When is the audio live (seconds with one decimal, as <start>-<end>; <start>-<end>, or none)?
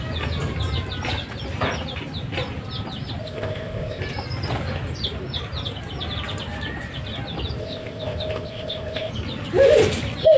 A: 0.0-3.2; 4.0-7.6; 9.1-10.4